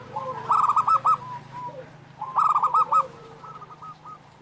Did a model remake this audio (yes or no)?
yes